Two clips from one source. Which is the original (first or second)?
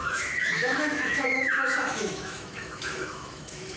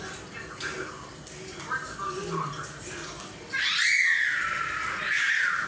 second